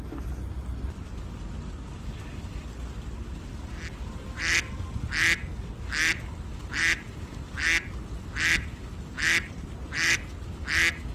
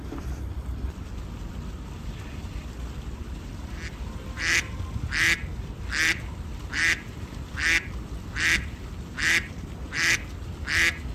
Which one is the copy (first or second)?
second